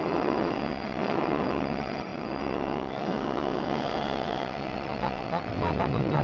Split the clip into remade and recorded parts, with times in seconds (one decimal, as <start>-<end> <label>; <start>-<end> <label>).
0.0-6.2 remade

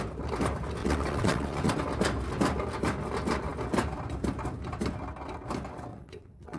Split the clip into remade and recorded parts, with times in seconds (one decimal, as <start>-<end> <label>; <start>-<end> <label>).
0.0-0.8 recorded; 0.8-1.7 remade; 1.7-5.9 recorded; 5.9-6.6 remade